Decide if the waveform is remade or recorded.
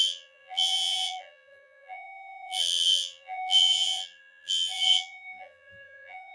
remade